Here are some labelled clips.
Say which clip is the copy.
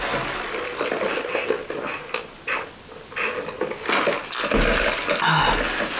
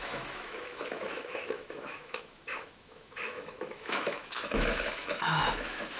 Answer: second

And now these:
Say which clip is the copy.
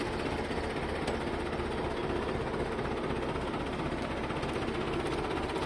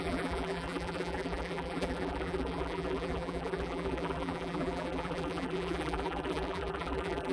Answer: second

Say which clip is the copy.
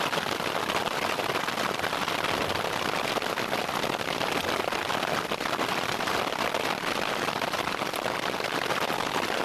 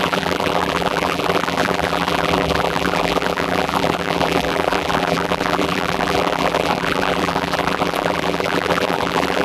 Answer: second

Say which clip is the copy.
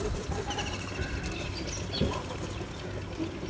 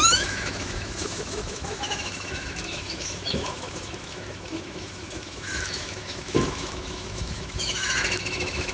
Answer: second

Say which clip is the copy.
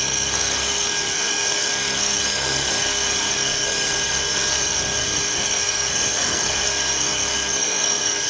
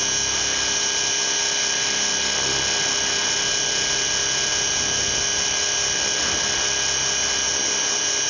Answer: first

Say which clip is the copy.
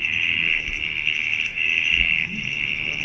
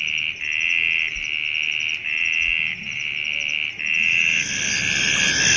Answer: first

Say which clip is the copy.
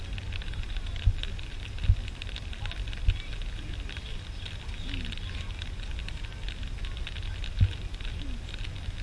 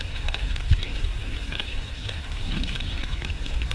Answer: second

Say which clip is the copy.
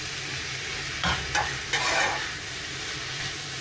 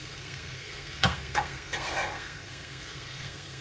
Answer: second